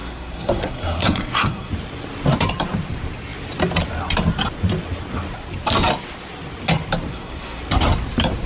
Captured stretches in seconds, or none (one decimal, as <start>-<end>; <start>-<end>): 1.7-7.1; 7.6-8.5